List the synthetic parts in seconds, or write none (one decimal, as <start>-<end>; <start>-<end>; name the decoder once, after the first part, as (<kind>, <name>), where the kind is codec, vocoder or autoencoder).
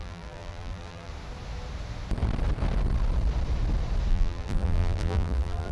0.0-1.1 (vocoder, BigVGAN v2); 4.1-5.7